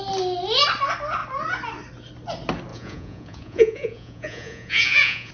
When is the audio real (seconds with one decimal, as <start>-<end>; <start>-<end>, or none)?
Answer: 0.0-2.7